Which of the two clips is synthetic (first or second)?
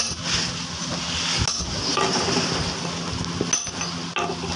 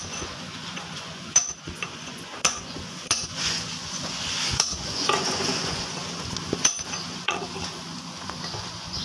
second